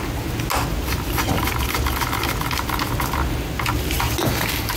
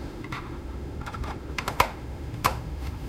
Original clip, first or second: first